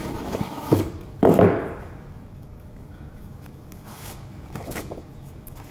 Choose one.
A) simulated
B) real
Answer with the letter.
A